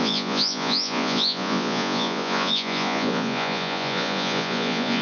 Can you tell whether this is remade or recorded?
remade